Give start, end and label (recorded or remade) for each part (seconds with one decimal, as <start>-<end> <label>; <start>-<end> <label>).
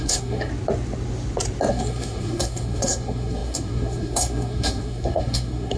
0.0-0.5 remade; 0.5-1.7 recorded; 1.7-5.8 remade